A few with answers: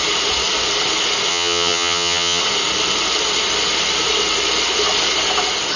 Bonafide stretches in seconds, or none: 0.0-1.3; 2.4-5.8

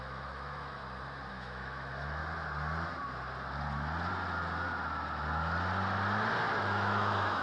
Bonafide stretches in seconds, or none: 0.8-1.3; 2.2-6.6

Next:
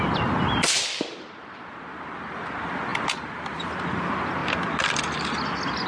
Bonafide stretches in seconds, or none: 0.0-5.9